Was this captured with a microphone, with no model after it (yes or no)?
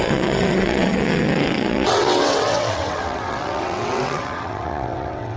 no